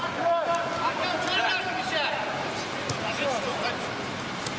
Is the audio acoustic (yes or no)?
yes